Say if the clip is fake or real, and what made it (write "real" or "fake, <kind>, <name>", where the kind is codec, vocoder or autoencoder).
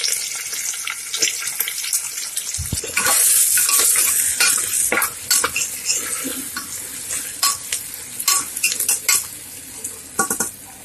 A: real